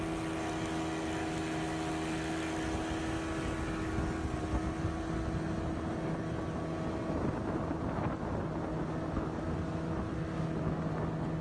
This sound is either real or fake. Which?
real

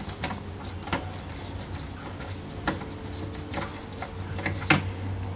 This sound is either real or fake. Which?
real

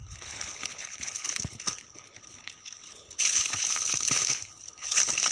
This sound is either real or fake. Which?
fake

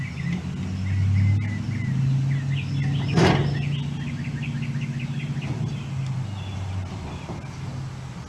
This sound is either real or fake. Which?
real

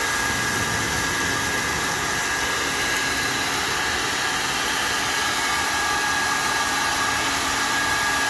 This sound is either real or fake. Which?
real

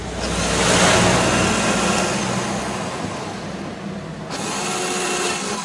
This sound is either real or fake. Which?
real